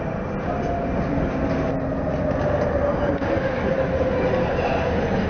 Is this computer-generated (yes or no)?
no